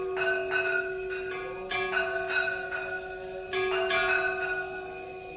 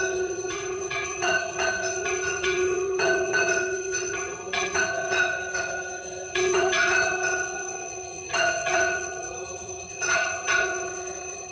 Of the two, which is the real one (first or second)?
first